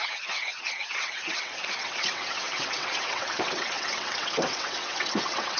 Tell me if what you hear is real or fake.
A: fake